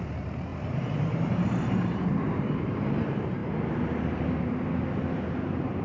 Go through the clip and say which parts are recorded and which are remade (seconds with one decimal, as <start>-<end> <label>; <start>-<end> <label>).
0.0-3.4 remade; 3.4-5.3 recorded; 5.3-5.8 remade